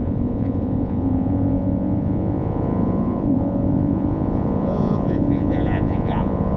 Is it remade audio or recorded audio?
remade